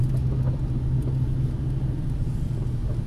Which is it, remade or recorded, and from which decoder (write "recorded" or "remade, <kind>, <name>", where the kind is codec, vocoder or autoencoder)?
recorded